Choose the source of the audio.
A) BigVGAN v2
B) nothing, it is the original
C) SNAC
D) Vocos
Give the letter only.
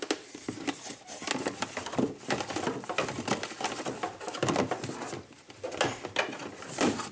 B